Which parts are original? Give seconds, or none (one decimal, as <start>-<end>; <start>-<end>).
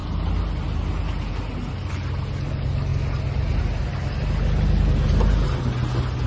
0.0-6.3